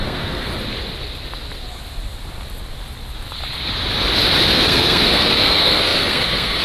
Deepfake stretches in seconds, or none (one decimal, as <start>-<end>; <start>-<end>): 0.0-0.5; 4.5-6.6